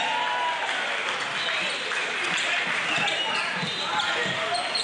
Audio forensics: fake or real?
real